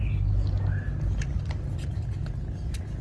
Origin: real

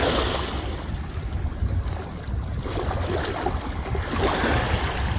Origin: real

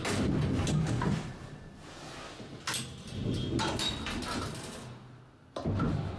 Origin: real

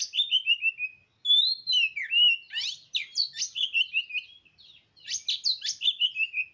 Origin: real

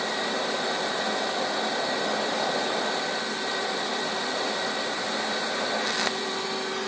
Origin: real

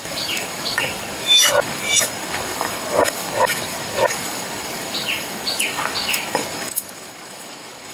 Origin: fake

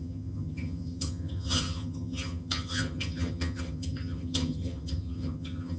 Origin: fake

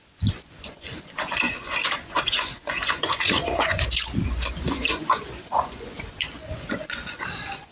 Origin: fake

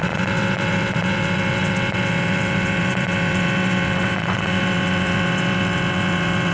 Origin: fake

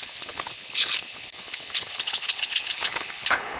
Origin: fake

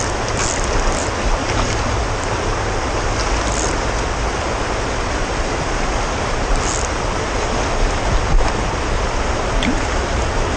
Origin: real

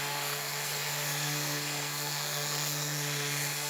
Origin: fake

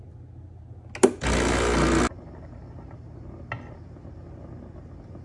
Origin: real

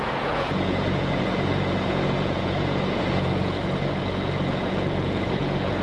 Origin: fake